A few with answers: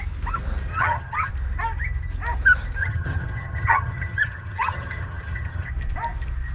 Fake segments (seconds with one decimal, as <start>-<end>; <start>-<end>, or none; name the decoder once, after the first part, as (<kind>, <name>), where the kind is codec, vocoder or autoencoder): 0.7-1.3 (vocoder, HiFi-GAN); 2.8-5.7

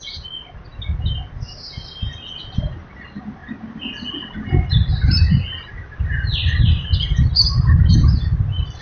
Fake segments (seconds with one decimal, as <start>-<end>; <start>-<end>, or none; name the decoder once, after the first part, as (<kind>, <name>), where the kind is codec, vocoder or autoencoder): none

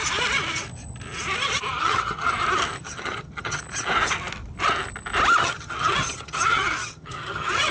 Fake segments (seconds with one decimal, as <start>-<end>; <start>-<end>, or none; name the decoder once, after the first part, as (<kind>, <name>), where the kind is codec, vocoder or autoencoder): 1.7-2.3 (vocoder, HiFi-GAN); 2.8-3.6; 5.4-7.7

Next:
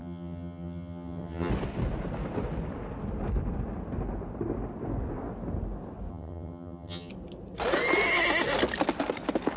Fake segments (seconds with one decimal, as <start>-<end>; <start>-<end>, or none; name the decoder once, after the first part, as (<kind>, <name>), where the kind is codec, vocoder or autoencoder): 0.0-1.5 (vocoder, HiFi-GAN); 6.1-7.1

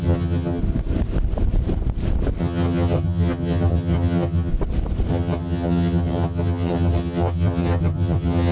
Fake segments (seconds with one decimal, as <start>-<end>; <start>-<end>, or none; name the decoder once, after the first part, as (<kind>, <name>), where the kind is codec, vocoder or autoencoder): 0.0-0.6 (vocoder, HiFi-GAN); 2.4-4.5; 5.1-8.5

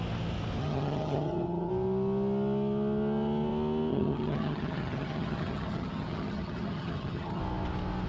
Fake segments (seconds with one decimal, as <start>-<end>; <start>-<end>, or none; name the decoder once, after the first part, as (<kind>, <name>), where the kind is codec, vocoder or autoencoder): 0.6-1.7 (vocoder, HiFi-GAN); 3.9-7.4